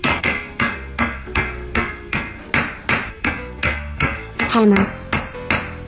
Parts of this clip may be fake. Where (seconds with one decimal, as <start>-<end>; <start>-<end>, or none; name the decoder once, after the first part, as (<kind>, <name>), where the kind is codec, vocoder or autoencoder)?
0.0-2.4 (codec, SNAC); 3.1-4.5